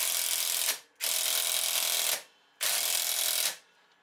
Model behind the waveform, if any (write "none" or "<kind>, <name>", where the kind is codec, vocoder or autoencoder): none